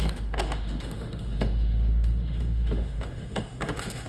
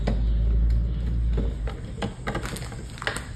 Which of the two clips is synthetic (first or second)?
first